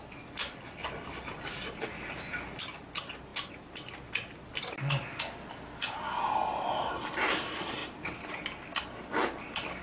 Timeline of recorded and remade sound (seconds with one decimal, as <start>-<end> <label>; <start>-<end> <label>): 0.0-9.8 recorded